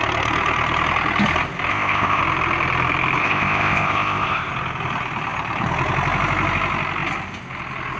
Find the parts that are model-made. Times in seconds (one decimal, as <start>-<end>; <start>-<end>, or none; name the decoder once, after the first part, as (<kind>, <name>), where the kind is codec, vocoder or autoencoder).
1.7-2.2 (codec, ZipCodec); 3.2-4.5